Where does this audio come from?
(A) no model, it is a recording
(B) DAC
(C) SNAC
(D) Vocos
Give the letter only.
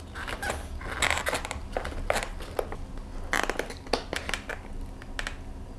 A